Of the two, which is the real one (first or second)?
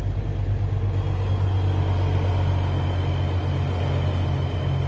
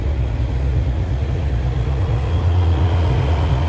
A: first